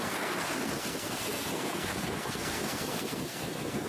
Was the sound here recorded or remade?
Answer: remade